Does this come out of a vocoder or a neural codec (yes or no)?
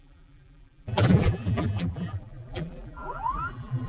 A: yes